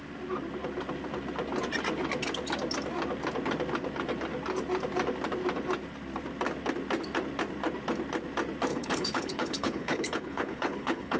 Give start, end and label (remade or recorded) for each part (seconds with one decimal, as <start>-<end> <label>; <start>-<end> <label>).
0.0-8.7 recorded; 8.7-11.2 remade